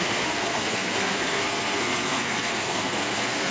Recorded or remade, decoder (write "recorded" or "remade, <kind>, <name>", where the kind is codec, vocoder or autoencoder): remade, codec, SNAC